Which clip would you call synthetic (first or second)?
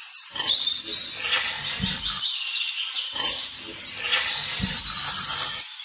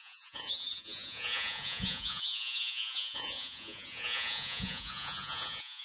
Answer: second